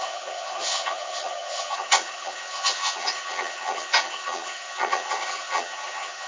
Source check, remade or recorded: remade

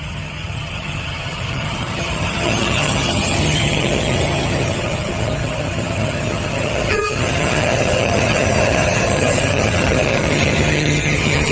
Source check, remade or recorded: remade